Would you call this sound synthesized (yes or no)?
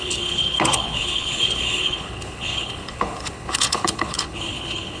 yes